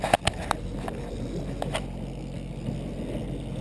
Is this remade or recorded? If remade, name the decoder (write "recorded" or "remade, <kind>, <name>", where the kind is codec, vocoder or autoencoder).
recorded